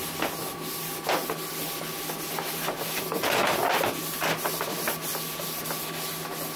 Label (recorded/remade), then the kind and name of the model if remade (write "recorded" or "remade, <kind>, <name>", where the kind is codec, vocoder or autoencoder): recorded